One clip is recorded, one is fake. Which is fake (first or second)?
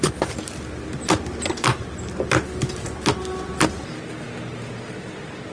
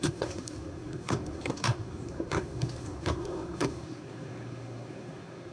second